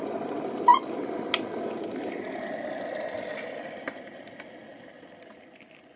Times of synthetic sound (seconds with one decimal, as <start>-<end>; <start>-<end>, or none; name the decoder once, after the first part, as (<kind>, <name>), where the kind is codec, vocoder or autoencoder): 4.7-5.3 (vocoder, BigVGAN v2)